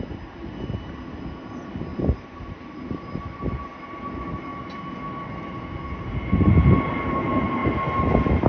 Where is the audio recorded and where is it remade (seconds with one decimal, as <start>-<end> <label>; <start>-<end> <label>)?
0.0-1.9 recorded; 1.9-3.2 remade; 3.2-8.5 recorded